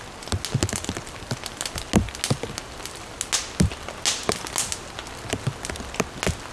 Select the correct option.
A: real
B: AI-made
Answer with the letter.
A